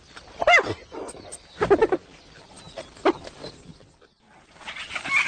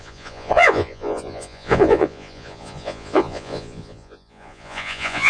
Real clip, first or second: first